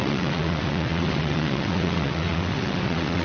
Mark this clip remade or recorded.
remade